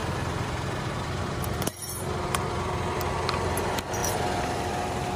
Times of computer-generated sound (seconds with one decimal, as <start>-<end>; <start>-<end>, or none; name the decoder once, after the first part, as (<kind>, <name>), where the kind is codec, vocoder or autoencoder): 0.0-3.1 (vocoder, BigVGAN v2); 4.0-5.2